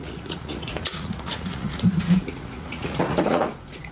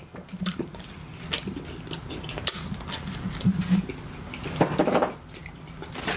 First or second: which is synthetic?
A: first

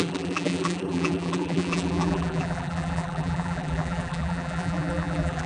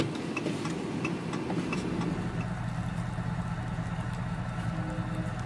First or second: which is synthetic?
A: first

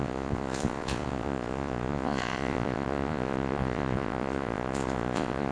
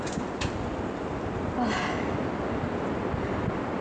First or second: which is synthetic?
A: first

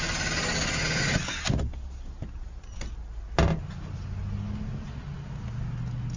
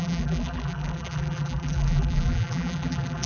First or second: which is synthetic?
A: second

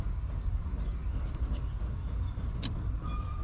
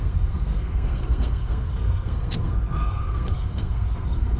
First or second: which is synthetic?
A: second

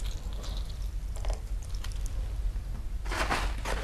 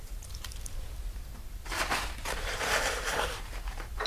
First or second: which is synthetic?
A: second